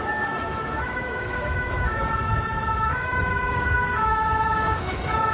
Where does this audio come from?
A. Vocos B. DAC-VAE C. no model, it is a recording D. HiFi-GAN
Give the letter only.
B